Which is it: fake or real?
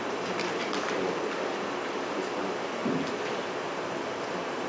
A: fake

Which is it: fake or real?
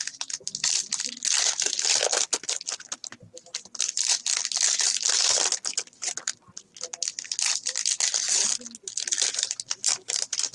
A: real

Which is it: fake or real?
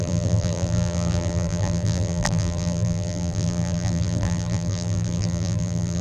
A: fake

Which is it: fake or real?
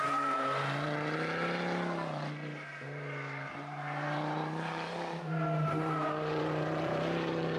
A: fake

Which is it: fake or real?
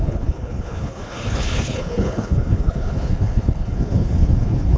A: fake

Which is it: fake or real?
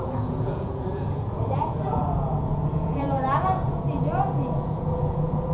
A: fake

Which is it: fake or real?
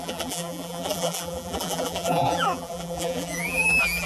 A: fake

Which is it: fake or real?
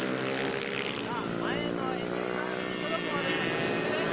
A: real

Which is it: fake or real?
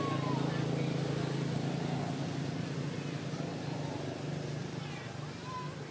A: real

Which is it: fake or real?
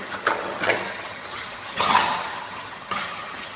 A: fake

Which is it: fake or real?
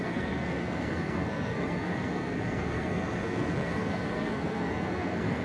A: fake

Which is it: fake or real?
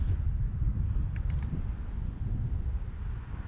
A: real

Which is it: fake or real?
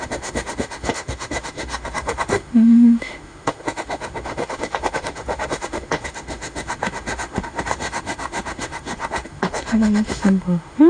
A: fake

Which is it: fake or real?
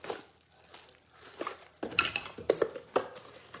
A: real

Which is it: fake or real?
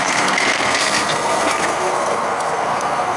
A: fake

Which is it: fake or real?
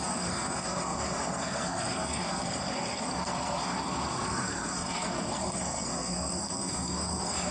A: fake